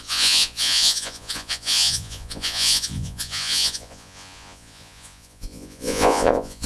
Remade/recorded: remade